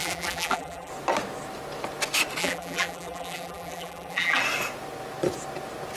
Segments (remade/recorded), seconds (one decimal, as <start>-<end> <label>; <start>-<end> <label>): 0.0-0.9 remade; 0.9-2.4 recorded; 2.4-4.4 remade; 4.4-6.0 recorded